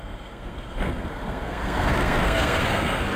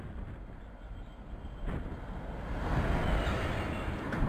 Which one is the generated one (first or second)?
first